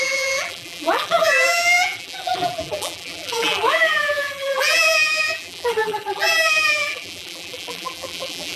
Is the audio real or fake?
fake